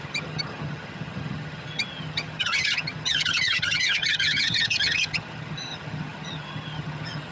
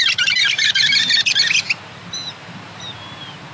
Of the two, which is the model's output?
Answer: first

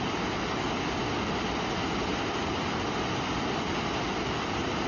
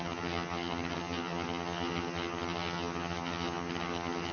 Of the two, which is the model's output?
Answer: second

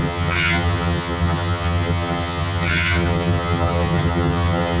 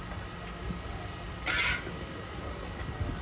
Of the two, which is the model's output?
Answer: first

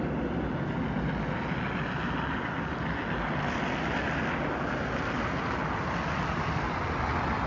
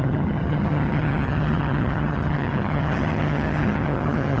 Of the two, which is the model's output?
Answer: second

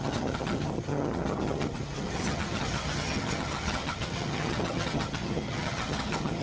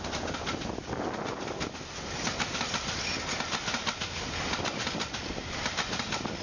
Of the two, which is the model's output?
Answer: first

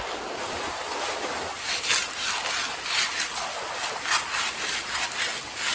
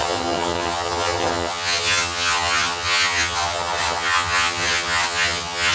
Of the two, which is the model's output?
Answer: second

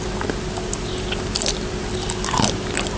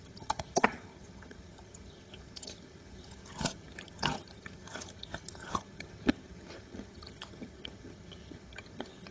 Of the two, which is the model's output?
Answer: second